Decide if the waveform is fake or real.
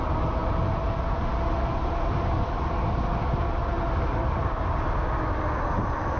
real